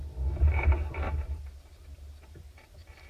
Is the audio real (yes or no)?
no